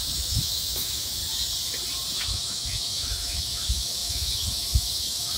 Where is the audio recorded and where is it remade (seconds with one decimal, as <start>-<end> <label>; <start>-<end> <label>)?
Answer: 0.0-1.2 remade; 1.2-2.1 recorded; 2.1-5.4 remade